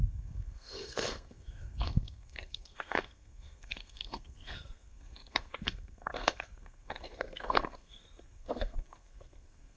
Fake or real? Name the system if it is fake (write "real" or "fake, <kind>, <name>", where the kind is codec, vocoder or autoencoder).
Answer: fake, codec, SNAC